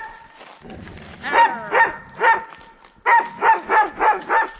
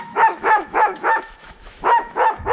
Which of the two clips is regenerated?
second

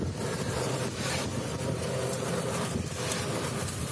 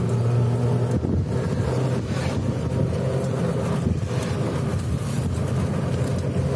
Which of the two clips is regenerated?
first